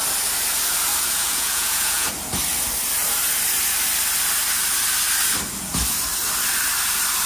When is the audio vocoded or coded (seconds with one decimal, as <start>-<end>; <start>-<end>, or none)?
0.9-2.1